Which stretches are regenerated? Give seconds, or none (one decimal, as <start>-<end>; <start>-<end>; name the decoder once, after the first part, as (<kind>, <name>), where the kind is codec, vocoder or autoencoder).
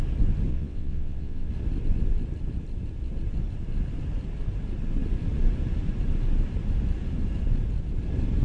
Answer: 0.5-1.5 (vocoder, WaveNeXt)